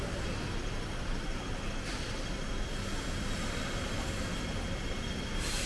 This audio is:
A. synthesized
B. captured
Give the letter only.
B